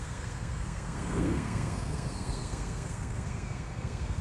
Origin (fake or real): fake